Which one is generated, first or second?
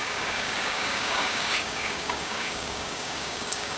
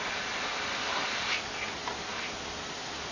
first